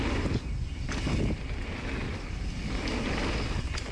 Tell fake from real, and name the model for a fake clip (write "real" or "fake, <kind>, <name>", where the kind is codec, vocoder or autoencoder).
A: real